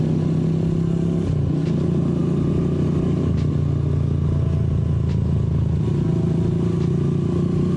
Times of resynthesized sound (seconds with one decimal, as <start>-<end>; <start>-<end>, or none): none